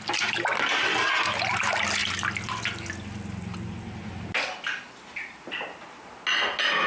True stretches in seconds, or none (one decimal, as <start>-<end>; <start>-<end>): 0.0-6.9